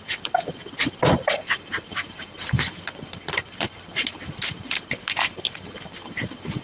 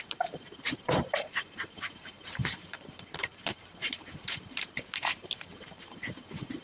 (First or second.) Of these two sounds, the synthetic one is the second